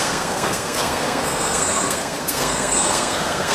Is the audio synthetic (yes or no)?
yes